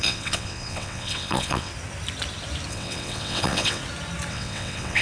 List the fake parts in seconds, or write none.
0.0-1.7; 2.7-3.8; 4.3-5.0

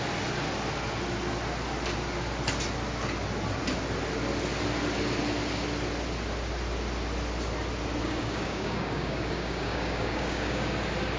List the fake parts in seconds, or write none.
8.0-10.7

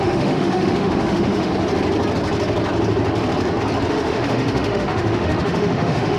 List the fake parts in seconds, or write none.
0.0-1.5; 3.9-6.2

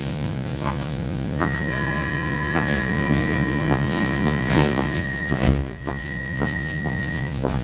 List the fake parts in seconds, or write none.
0.0-7.6

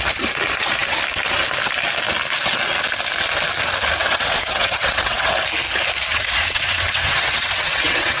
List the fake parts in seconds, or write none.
4.0-5.3; 6.1-8.2